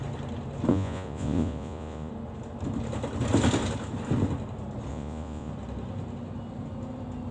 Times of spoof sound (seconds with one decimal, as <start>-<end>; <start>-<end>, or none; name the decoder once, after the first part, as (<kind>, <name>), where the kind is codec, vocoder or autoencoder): 0.7-2.1 (vocoder, Vocos); 4.9-5.5